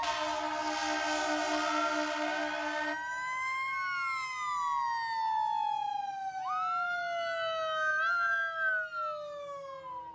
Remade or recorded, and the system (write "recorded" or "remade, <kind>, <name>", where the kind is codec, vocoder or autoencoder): recorded